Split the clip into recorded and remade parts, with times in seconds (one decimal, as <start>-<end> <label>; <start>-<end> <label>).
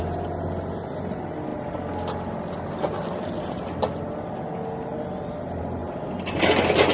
0.0-6.9 recorded